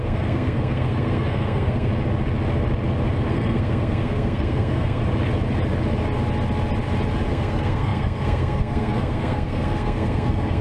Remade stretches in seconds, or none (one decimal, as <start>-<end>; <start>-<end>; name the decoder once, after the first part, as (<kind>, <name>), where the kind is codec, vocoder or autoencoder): 0.0-1.9 (codec, SNAC); 3.3-5.0; 7.3-10.6